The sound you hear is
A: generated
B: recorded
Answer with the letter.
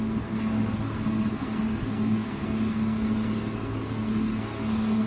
A